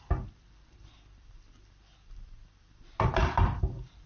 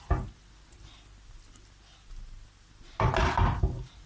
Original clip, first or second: second